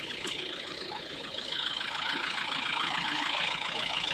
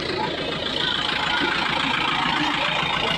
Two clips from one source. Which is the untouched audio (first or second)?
second